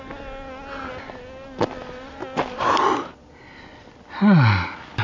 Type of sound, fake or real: real